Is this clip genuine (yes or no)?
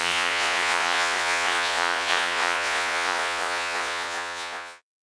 no